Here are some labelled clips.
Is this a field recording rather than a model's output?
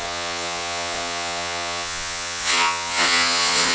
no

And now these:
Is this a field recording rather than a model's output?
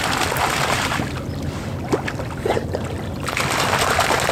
yes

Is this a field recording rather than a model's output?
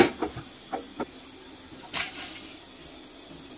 yes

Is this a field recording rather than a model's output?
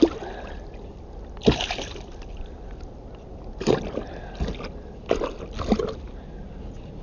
yes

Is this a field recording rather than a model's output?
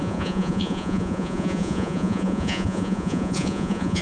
no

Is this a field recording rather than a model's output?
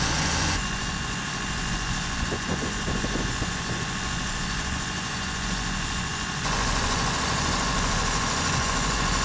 no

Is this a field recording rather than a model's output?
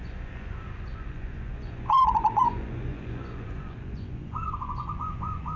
no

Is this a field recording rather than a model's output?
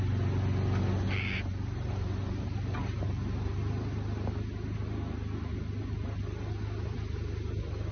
yes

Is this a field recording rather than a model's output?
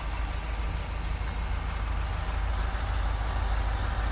yes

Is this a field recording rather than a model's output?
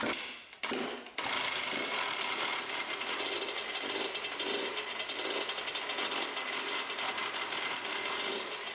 yes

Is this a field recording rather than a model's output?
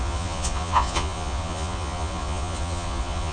no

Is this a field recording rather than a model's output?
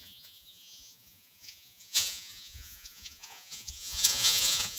no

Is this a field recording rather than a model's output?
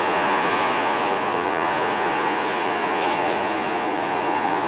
no